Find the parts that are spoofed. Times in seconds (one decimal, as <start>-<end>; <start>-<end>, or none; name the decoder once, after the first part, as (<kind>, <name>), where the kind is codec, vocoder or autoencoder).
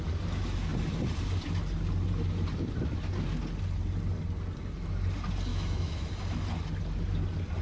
5.5-6.1 (autoencoder, DAC-VAE)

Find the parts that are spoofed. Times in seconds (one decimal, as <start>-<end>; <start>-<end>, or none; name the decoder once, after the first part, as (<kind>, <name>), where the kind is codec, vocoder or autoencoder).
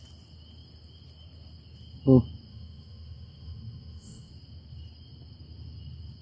2.5-4.3 (autoencoder, DAC-VAE)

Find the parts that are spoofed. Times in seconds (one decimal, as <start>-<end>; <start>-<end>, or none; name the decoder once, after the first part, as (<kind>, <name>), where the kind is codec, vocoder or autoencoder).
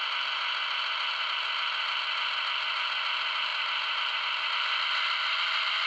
none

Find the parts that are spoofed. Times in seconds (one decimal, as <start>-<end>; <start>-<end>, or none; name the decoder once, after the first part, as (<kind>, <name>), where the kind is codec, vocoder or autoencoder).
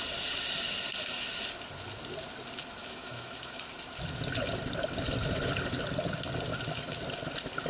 2.8-3.6 (autoencoder, DAC-VAE)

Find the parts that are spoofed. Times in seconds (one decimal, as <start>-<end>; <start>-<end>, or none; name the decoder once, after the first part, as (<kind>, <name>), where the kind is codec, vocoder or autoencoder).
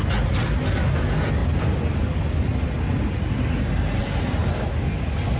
none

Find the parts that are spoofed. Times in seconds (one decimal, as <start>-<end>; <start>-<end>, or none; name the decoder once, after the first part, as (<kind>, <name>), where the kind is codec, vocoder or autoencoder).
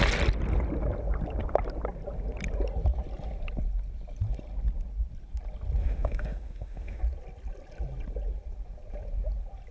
5.8-7.0 (autoencoder, DAC-VAE)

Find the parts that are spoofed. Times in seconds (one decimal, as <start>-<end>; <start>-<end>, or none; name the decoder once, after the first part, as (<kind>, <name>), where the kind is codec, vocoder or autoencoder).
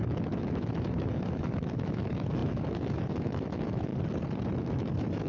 0.0-3.9 (autoencoder, DAC-VAE); 4.6-5.3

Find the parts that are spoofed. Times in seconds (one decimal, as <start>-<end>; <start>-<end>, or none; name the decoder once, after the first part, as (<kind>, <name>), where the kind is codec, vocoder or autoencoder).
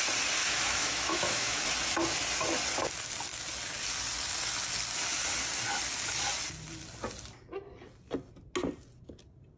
0.4-1.6 (autoencoder, DAC-VAE)